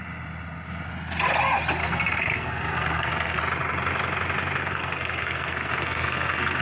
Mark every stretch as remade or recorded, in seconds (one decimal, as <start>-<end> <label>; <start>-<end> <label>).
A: 0.0-1.8 recorded; 1.8-3.4 remade; 3.4-4.6 recorded; 4.6-6.6 remade